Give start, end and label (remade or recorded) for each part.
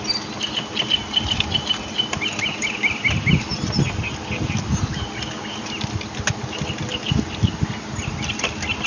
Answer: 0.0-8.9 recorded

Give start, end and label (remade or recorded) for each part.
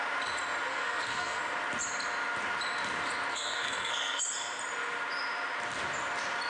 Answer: 0.0-0.7 recorded; 0.7-1.4 remade; 1.4-3.3 recorded; 3.3-4.2 remade; 4.2-6.5 recorded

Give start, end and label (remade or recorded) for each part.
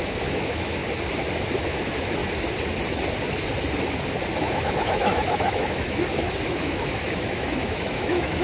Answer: 0.0-0.8 remade; 0.8-1.6 recorded; 1.6-2.2 remade; 2.2-4.4 recorded; 4.4-8.4 remade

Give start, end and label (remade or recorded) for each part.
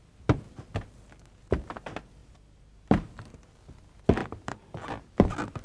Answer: 0.0-2.2 recorded; 2.2-3.1 remade; 3.1-4.2 recorded; 4.2-4.8 remade; 4.8-5.6 recorded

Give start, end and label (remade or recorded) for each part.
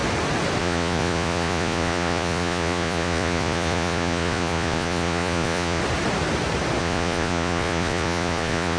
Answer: 0.0-0.6 recorded; 0.6-5.8 remade; 5.8-6.8 recorded; 6.8-8.8 remade